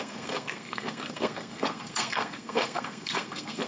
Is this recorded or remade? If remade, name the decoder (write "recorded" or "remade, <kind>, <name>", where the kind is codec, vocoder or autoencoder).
remade, codec, SNAC